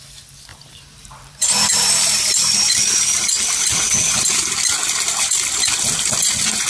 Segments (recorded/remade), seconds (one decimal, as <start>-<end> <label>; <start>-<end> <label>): 0.0-0.5 recorded; 0.5-3.0 remade; 3.0-6.7 recorded